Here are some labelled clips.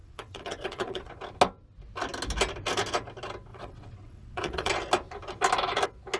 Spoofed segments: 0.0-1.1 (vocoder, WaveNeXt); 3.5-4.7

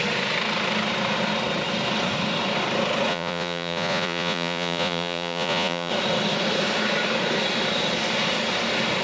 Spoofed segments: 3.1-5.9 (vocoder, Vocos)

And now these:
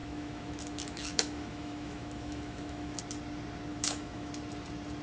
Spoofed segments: 0.0-3.0 (autoencoder, DAC-VAE); 3.7-4.3

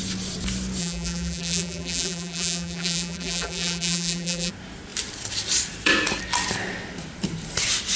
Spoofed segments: 0.8-4.5 (vocoder, BigVGAN v2)